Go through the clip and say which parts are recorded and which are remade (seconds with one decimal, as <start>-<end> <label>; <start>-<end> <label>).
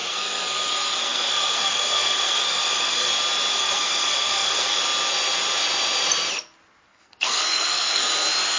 0.0-3.1 remade; 3.1-3.5 recorded; 3.5-4.8 remade; 4.8-6.9 recorded; 6.9-8.1 remade; 8.1-8.6 recorded